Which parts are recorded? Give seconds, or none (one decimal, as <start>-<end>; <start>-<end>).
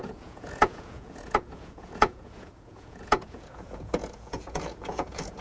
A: none